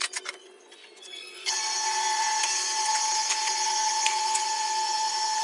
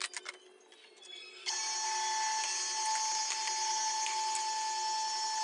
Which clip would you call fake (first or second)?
first